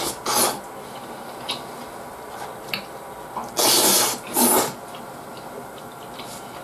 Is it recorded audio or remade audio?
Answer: recorded